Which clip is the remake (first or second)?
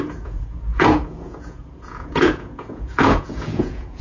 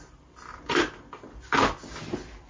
first